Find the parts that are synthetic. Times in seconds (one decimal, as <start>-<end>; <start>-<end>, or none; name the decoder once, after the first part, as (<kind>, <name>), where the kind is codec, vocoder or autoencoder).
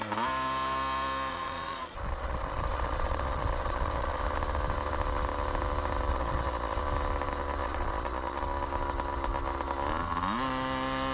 1.3-4.2 (vocoder, Vocos); 6.1-6.8; 7.6-8.4